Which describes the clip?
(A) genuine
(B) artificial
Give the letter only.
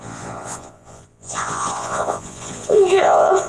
B